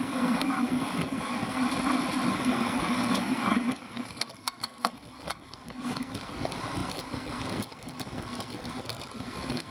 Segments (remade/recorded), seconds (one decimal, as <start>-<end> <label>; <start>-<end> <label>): 0.0-1.6 remade; 1.6-2.3 recorded; 2.3-9.7 remade